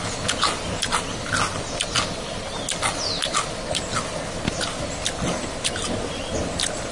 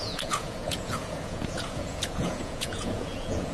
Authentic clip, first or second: first